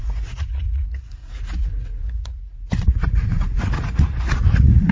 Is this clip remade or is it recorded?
remade